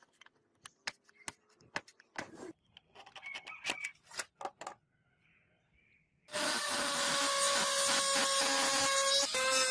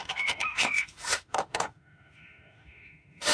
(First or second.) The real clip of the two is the first